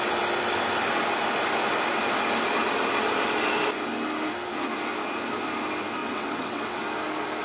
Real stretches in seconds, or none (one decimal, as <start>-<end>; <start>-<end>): 0.0-6.0; 6.8-7.4

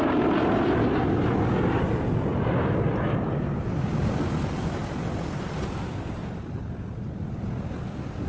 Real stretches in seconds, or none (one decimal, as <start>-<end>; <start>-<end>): 0.0-8.3

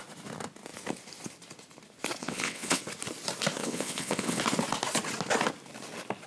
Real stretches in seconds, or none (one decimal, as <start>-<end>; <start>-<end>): 0.0-2.2; 2.8-3.6; 4.4-6.3

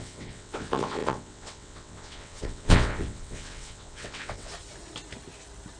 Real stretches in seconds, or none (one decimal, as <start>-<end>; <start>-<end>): 4.5-5.8

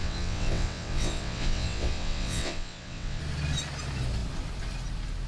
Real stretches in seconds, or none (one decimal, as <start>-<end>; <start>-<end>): 3.2-5.3